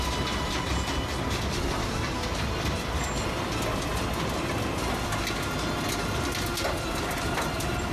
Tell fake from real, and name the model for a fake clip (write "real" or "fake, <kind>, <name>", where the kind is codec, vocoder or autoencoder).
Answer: real